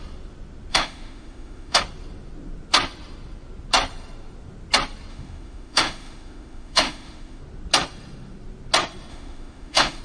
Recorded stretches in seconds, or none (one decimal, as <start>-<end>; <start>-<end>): 0.0-0.7; 1.8-5.1; 7.4-9.1